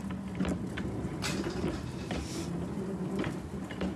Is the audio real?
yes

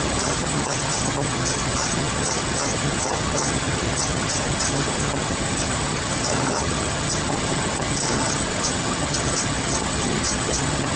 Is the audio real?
no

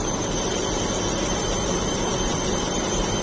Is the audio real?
yes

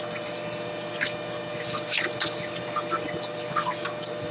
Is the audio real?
yes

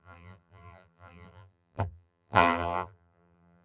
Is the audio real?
no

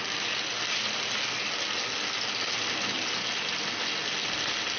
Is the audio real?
yes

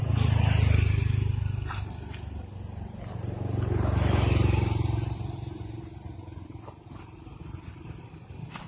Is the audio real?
yes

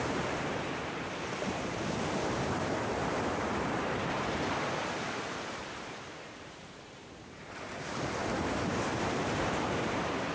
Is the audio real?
no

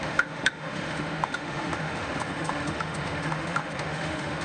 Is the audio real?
no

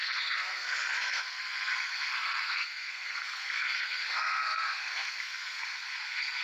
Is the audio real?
no